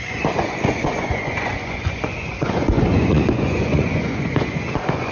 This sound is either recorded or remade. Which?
remade